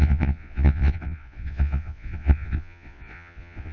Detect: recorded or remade remade